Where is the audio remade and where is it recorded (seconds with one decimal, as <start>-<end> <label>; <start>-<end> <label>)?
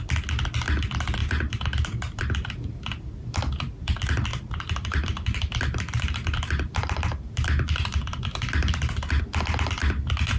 0.0-1.2 recorded; 1.2-2.2 remade; 2.2-4.3 recorded; 4.3-9.2 remade; 9.2-10.4 recorded